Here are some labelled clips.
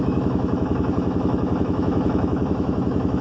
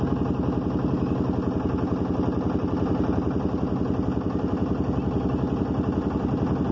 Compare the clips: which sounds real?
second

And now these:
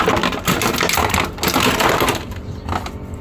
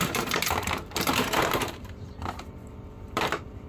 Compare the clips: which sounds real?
first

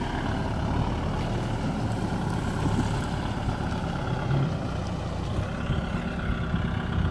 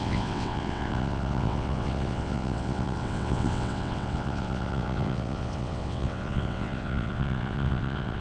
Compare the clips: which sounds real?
first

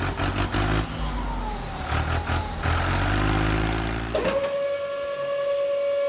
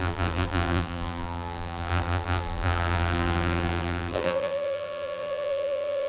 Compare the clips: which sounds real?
first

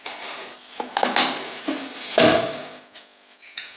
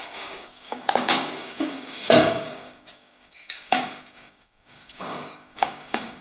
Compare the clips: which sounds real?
first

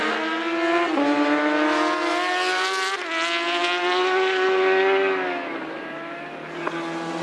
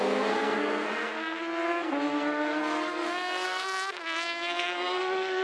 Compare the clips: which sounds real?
first